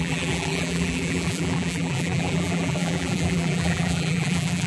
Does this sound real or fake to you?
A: fake